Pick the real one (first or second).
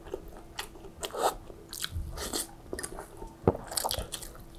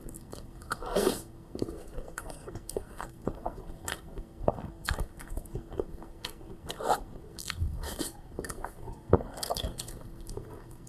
first